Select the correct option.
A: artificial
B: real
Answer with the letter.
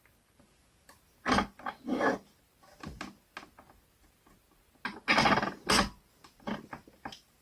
B